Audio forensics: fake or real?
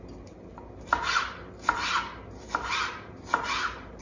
fake